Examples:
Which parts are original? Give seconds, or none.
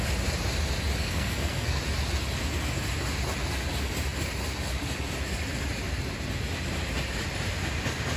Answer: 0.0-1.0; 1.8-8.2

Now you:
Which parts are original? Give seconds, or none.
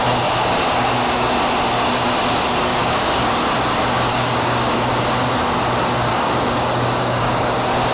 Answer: 0.0-0.4; 1.3-2.7; 3.3-4.1; 5.0-6.1